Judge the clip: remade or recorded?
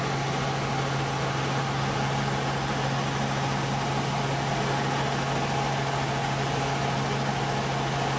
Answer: recorded